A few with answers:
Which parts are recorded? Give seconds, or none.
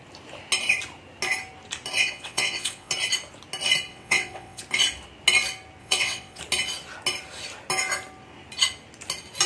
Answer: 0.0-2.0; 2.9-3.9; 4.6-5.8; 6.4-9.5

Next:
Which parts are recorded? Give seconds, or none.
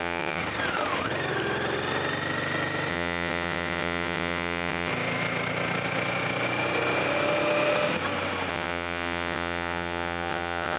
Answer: 0.4-2.9; 4.9-8.5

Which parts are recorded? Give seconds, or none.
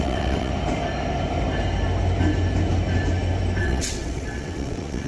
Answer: 0.5-3.6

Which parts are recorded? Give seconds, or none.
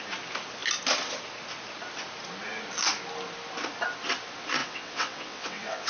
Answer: 0.0-4.6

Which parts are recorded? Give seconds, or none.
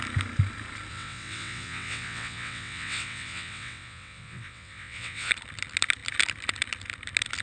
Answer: 0.0-0.9; 5.3-7.4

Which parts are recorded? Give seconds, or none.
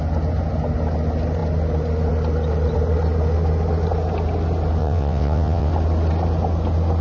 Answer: 0.0-4.8; 5.7-7.0